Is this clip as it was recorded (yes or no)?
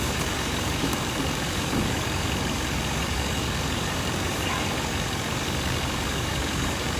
no